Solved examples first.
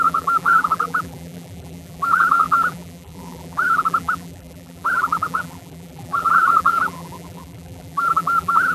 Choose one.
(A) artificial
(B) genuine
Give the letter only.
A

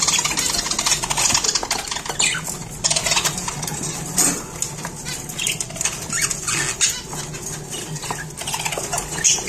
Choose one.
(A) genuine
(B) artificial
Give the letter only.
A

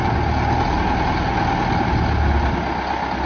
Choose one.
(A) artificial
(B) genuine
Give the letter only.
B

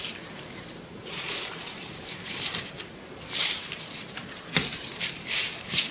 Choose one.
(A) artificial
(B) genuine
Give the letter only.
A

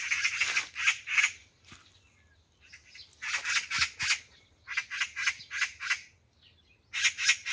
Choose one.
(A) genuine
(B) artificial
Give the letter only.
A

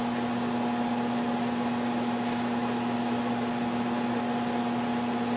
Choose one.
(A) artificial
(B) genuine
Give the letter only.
B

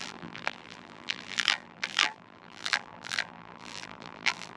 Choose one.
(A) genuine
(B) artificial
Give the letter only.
B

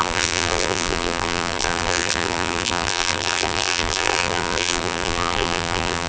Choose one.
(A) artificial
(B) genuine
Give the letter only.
A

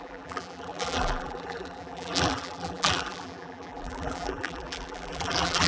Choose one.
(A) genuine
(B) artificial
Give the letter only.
B